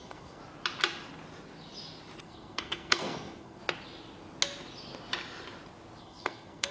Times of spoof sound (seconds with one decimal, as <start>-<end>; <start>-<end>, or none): 0.0-0.4; 2.2-3.6; 6.0-6.7